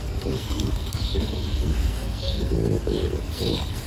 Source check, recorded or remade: remade